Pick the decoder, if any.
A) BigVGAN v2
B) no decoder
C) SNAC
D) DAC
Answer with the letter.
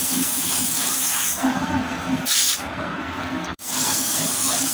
C